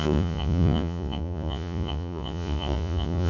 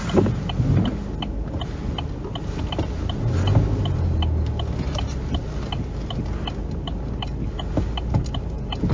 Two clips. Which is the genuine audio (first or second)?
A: second